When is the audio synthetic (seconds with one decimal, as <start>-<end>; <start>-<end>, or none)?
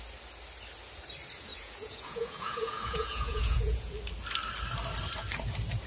1.5-3.9